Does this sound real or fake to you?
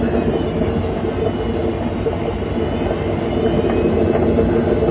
real